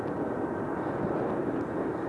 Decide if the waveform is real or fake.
real